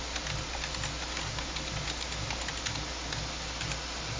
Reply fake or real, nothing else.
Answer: real